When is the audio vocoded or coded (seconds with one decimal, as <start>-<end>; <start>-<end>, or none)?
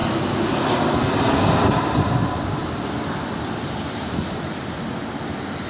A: 2.6-5.0